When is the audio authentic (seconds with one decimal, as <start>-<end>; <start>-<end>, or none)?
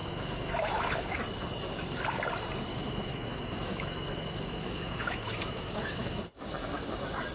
1.2-2.7; 6.2-7.3